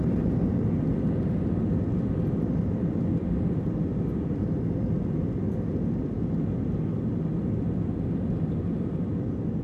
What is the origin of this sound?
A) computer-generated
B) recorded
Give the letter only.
B